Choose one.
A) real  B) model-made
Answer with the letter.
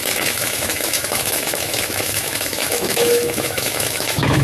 B